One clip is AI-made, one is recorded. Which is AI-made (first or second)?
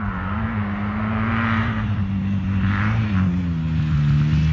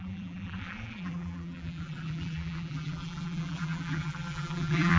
second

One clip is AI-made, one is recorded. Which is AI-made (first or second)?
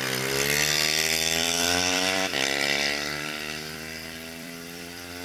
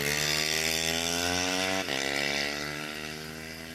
first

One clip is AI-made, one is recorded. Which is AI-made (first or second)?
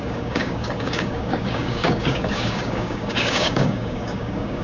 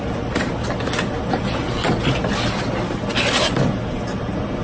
first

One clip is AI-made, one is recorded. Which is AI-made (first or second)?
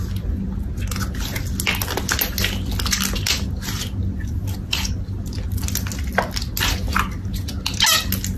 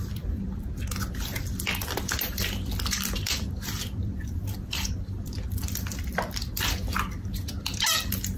second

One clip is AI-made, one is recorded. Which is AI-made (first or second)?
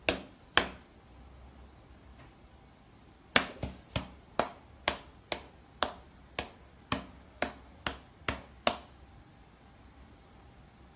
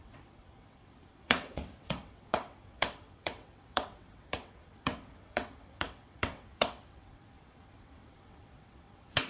second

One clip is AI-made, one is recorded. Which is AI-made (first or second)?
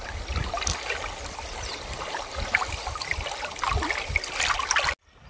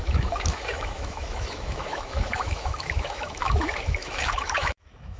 second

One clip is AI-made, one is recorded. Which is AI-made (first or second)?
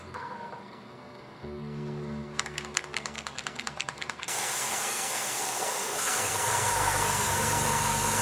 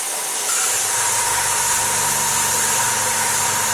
first